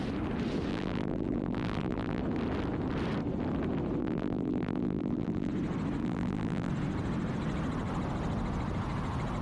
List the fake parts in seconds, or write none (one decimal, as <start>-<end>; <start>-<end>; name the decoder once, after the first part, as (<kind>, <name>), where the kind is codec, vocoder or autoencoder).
0.7-2.2 (vocoder, BigVGAN v2); 4.0-5.5; 6.0-6.7